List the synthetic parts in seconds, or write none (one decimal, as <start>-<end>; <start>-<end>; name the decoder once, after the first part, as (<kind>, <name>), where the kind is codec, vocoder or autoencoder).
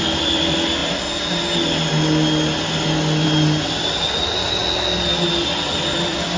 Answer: 0.0-0.8 (vocoder, BigVGAN v2); 4.0-4.6; 5.9-6.4